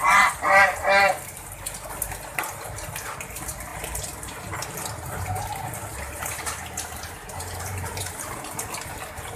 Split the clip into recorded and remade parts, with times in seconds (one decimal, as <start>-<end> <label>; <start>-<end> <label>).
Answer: 0.0-5.9 recorded; 5.9-8.1 remade; 8.1-9.4 recorded